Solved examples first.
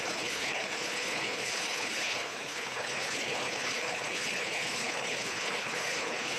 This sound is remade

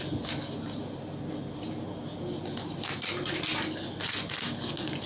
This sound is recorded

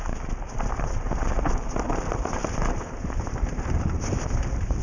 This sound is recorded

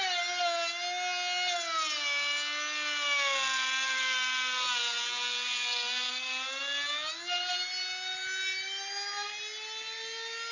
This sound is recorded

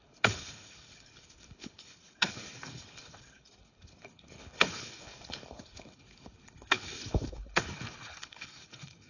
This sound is remade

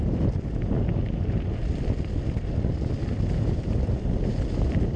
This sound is recorded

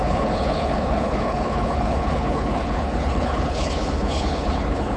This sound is remade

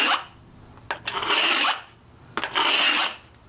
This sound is recorded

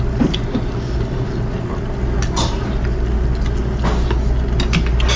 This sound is recorded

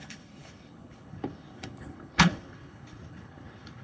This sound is remade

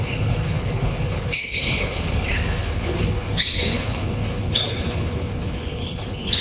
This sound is remade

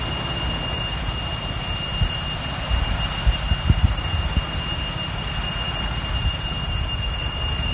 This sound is recorded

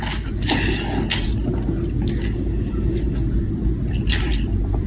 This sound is recorded